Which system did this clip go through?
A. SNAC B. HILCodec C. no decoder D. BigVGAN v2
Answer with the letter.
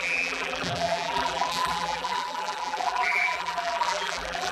D